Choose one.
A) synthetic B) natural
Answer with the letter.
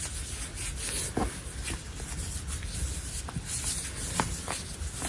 B